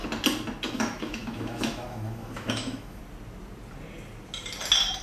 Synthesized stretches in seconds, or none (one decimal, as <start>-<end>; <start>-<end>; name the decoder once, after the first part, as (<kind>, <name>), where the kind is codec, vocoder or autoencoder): 0.7-3.0 (autoencoder, DAC-VAE)